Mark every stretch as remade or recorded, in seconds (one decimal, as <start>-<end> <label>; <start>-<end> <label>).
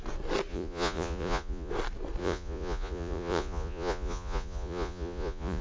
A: 0.0-0.5 recorded; 0.5-1.7 remade; 1.7-2.2 recorded; 2.2-5.6 remade